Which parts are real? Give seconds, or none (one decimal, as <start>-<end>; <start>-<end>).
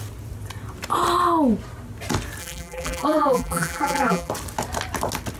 0.0-2.4; 4.3-5.4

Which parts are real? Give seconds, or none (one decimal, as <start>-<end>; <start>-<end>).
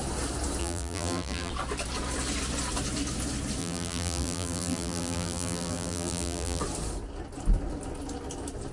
0.0-0.6; 1.5-3.6; 6.6-8.7